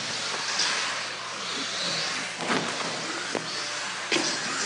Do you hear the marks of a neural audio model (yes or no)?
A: no